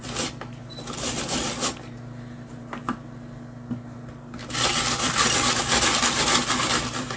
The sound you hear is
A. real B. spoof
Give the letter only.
A